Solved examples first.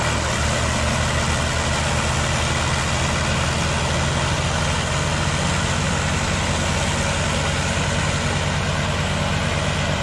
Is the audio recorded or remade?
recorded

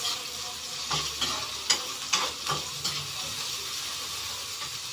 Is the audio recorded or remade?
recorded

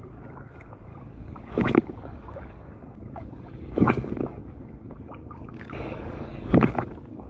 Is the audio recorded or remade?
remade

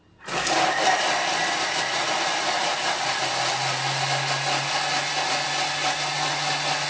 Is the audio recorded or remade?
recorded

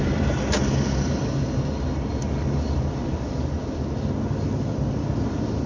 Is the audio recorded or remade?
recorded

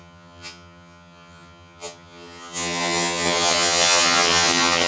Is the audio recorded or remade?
remade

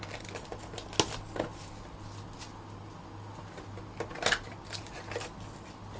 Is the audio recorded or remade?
recorded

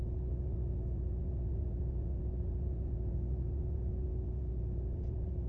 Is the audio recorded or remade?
recorded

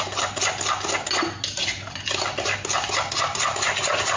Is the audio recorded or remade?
recorded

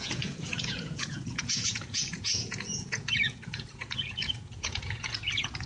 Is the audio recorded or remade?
remade